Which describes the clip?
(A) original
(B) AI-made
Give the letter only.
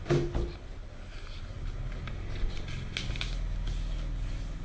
A